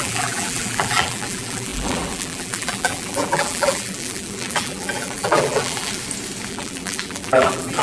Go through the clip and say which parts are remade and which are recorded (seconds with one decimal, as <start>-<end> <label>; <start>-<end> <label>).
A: 0.0-6.0 remade; 6.0-6.5 recorded; 6.5-7.8 remade